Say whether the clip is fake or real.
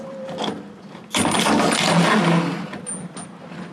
real